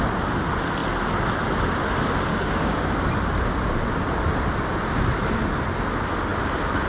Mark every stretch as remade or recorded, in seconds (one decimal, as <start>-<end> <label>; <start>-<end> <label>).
0.0-2.3 recorded; 2.3-2.8 remade; 2.8-6.9 recorded